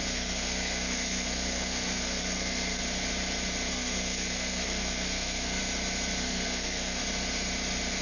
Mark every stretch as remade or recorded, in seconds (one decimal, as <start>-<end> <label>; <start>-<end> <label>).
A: 0.0-2.8 remade; 2.8-3.7 recorded; 3.7-5.6 remade; 5.6-6.2 recorded; 6.2-7.0 remade; 7.0-8.0 recorded